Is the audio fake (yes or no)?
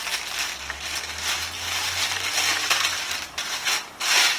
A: no